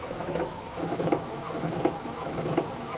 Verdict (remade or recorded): remade